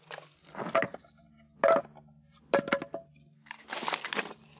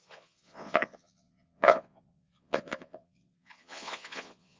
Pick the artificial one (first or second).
second